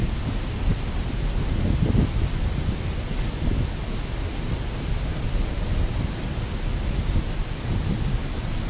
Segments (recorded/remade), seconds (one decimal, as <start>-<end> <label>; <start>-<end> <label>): 0.0-8.7 recorded